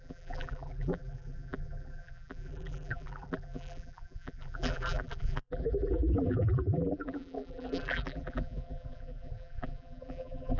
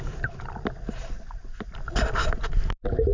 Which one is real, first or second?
second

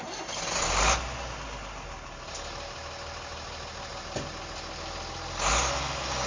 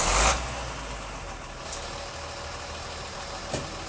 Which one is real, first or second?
first